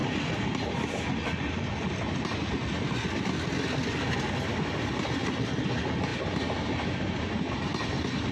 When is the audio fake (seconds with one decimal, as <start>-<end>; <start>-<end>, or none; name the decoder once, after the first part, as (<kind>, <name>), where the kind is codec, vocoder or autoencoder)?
none